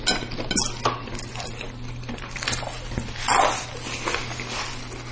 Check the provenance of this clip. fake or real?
real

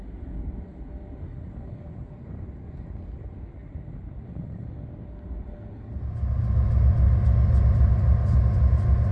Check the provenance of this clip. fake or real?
real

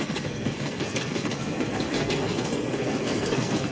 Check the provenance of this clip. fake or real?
fake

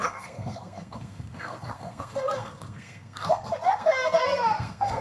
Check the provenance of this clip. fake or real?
fake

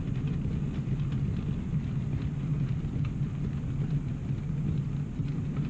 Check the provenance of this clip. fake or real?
real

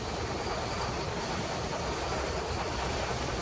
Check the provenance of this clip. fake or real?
real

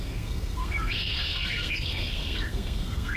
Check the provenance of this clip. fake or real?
fake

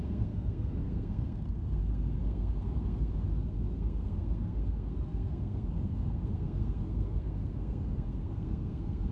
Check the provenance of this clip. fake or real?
fake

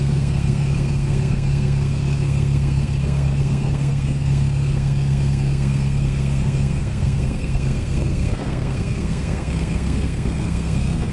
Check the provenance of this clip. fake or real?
fake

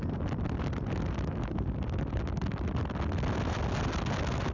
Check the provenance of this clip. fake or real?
real